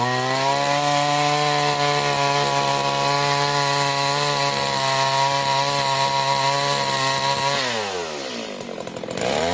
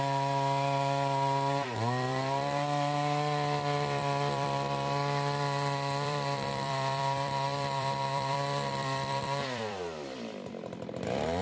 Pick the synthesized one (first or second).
second